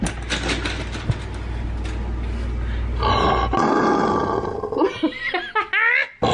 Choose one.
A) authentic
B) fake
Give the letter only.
A